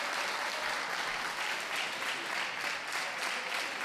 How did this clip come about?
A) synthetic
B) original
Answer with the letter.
B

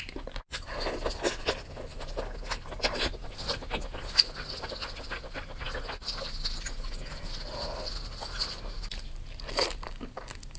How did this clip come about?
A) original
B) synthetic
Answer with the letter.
A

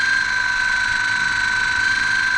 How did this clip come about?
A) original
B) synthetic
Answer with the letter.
A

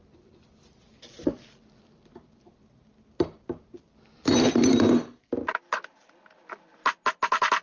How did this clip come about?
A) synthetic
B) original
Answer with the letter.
B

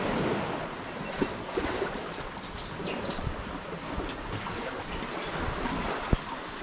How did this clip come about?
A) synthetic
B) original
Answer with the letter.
B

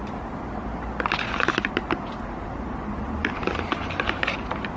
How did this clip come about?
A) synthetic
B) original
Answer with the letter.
B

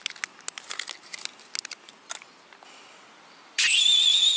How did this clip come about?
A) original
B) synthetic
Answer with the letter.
A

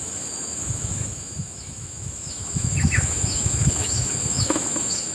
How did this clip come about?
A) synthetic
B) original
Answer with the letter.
A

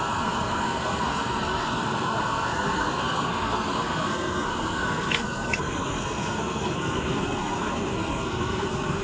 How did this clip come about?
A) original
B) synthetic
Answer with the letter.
B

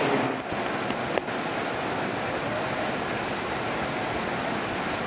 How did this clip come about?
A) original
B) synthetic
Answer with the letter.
A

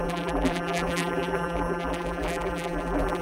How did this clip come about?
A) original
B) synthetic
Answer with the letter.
B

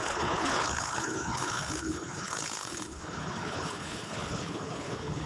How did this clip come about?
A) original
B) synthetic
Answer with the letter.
B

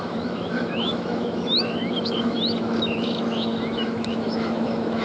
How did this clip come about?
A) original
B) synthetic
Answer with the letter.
B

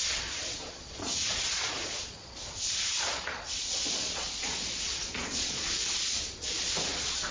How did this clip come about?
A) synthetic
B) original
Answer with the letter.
A